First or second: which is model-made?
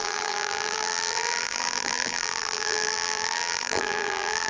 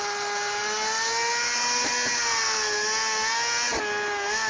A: first